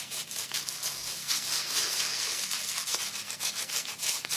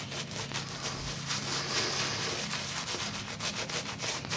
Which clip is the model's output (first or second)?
first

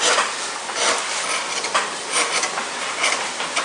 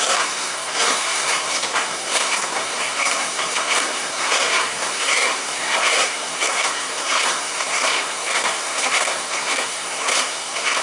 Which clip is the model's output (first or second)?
second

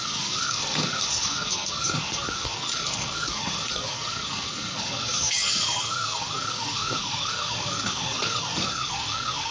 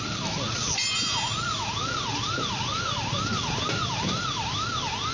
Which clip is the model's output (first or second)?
first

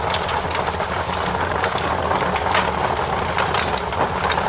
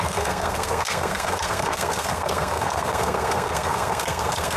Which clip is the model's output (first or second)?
second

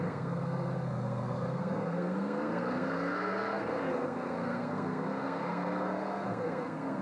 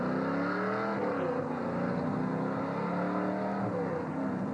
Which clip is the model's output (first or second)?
first